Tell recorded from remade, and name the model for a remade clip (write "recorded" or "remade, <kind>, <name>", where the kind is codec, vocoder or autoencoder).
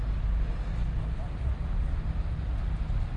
recorded